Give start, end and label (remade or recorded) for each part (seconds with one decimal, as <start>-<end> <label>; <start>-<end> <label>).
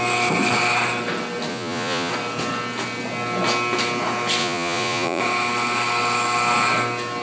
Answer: 0.0-1.5 recorded; 1.5-2.1 remade; 2.1-4.4 recorded; 4.4-5.2 remade; 5.2-7.2 recorded